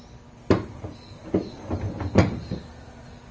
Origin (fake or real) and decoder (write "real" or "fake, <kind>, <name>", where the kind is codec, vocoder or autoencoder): real